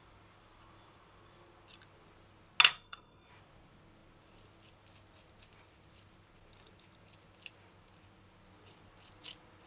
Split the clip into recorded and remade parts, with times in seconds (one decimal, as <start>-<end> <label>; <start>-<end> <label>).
0.0-2.7 recorded; 2.7-3.3 remade; 3.3-9.7 recorded